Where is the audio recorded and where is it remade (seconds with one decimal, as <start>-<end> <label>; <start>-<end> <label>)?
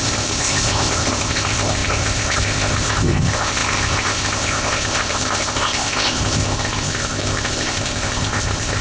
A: 0.0-8.8 remade